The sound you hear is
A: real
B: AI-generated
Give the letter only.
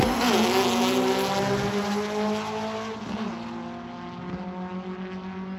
A